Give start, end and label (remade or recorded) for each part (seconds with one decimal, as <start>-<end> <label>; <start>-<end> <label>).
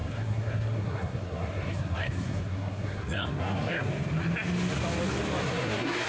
0.0-3.9 remade; 3.9-5.4 recorded; 5.4-6.1 remade